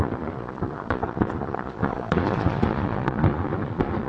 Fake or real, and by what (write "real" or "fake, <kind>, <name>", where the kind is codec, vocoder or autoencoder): fake, vocoder, Vocos